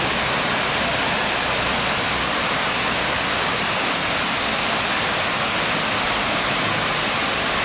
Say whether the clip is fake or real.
real